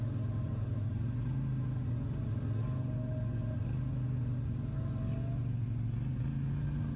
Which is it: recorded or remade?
recorded